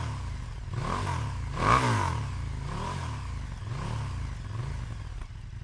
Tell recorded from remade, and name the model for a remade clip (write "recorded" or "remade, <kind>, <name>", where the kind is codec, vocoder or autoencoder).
recorded